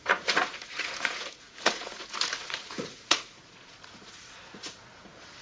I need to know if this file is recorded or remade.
remade